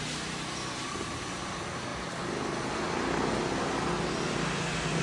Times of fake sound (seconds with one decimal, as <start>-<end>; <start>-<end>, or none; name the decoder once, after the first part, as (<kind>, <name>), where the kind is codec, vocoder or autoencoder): 0.0-1.9 (vocoder, BigVGAN v2)